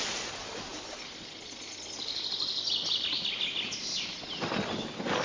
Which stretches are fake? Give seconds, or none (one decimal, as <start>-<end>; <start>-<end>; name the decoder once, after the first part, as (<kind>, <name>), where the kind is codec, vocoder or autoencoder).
none